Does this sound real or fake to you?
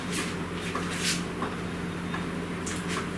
real